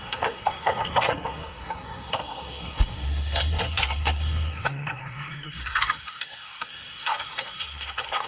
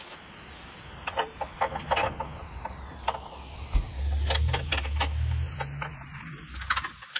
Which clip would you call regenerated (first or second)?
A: first